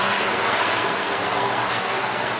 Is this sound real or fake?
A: fake